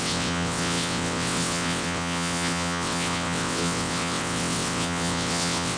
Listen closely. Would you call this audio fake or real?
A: fake